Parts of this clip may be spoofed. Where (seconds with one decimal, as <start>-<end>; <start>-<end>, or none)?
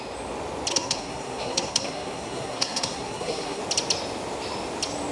0.7-3.6